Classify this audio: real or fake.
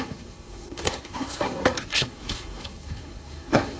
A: fake